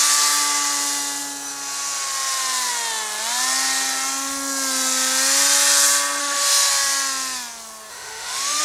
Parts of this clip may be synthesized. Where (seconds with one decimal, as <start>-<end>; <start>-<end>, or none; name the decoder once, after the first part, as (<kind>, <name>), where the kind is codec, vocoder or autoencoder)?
6.2-6.7 (autoencoder, DAC-VAE); 7.9-8.6